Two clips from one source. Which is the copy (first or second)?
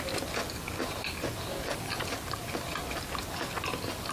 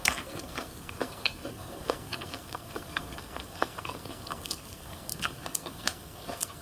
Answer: second